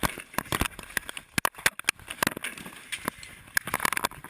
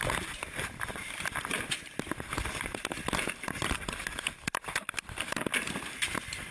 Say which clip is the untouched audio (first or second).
first